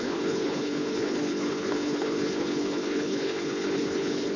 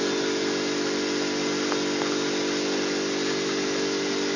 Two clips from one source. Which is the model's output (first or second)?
first